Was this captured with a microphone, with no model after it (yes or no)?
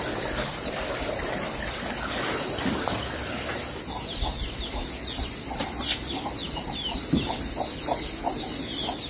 yes